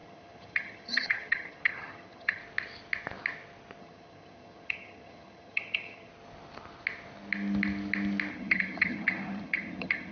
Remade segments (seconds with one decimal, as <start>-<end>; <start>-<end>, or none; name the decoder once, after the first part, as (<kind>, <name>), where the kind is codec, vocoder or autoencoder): 0.0-2.4 (vocoder, HiFi-GAN); 3.8-6.1; 8.3-10.1